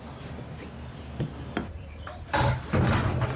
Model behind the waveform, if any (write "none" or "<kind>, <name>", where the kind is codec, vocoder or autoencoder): none